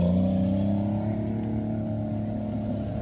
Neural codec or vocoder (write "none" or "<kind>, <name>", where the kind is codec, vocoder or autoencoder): none